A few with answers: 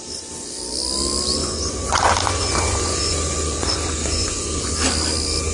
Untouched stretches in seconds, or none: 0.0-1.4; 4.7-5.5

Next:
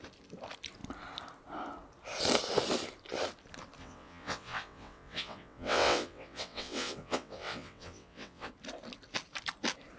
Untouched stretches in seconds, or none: 0.0-3.8; 8.5-10.0

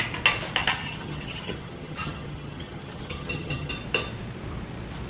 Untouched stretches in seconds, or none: 0.0-0.6; 3.7-5.1

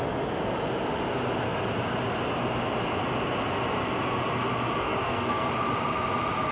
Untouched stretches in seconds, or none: 0.0-4.8; 5.5-6.5